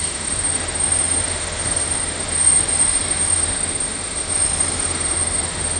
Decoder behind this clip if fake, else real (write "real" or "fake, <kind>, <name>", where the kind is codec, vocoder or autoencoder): fake, autoencoder, DAC-VAE